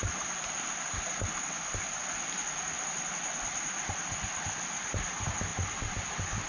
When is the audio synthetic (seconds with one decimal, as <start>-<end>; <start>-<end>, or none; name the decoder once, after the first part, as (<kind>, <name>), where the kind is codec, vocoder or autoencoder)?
none